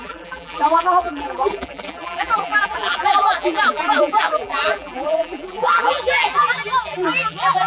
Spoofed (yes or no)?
yes